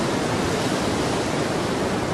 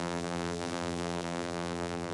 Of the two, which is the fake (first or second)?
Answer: second